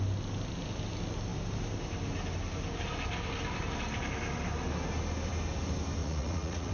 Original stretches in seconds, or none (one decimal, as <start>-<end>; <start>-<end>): 0.0-6.0